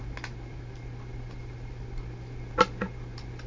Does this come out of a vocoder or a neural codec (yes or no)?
no